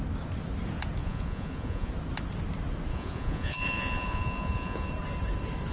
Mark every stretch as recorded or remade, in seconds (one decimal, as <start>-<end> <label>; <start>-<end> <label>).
0.0-1.0 recorded; 1.0-1.9 remade; 1.9-2.9 recorded; 2.9-4.9 remade; 4.9-5.7 recorded